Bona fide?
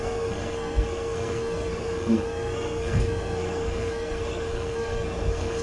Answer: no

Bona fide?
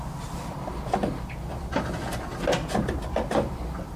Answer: yes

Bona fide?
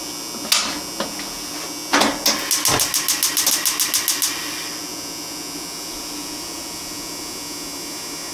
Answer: yes